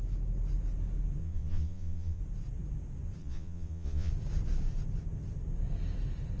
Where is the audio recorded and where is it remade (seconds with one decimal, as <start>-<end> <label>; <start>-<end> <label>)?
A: 0.0-1.2 recorded; 1.2-2.2 remade; 2.2-3.2 recorded; 3.2-4.1 remade; 4.1-6.4 recorded